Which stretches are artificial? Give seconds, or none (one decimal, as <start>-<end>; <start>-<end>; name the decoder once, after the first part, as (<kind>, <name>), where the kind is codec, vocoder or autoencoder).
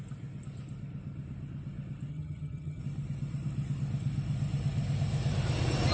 2.1-2.8 (vocoder, HiFi-GAN)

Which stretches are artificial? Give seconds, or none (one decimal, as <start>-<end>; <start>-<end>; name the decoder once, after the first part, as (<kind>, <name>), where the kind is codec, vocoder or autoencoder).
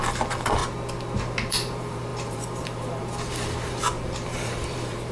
0.0-0.6 (vocoder, BigVGAN v2); 1.5-5.1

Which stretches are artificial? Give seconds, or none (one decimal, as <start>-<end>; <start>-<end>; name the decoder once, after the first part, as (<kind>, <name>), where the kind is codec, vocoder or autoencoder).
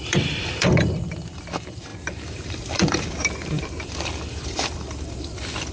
0.0-5.7 (vocoder, BigVGAN v2)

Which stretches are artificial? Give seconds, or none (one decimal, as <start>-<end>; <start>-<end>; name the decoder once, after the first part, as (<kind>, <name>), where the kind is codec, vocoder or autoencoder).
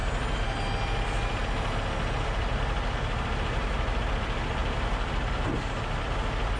0.0-0.6 (vocoder, BigVGAN v2); 4.6-5.1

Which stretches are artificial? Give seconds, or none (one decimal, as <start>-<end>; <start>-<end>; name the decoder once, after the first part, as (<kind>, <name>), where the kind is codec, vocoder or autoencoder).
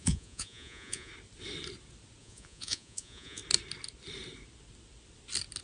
0.0-1.1 (vocoder, Vocos); 2.2-3.4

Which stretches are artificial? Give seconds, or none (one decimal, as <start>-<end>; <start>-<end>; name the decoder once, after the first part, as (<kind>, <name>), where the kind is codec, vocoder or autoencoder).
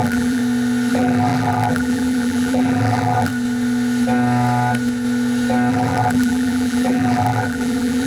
0.0-0.4 (vocoder, BigVGAN v2); 0.9-3.3; 5.7-8.1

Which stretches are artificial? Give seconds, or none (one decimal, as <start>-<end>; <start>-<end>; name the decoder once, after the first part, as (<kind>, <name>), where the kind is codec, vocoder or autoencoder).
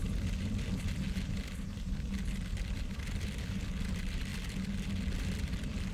none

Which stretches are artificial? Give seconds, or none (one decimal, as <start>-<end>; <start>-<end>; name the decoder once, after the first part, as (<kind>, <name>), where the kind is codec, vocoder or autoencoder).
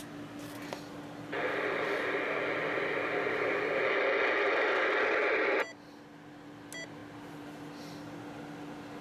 none